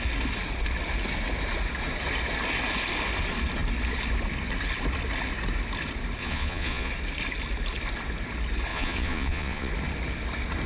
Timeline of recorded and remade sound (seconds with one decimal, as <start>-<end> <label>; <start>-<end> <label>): 0.0-6.2 recorded; 6.2-6.9 remade; 6.9-8.7 recorded; 8.7-9.7 remade; 9.7-10.7 recorded